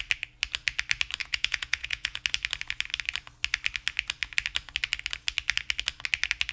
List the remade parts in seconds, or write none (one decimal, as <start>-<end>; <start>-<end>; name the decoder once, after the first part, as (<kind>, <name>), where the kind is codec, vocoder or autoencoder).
1.2-2.2 (vocoder, Vocos)